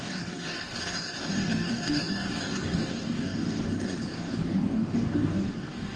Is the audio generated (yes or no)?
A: yes